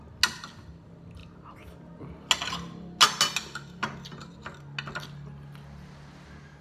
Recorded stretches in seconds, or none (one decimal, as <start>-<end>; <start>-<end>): 0.0-6.6